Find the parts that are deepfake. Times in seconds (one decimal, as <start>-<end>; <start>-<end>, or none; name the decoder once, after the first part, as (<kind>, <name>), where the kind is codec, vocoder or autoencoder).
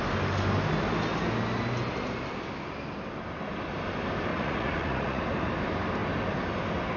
4.3-5.2 (vocoder, Vocos)